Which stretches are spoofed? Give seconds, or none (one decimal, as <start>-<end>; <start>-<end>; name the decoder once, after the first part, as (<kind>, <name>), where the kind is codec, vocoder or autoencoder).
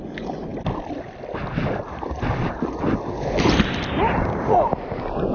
none